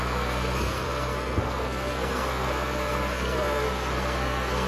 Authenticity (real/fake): fake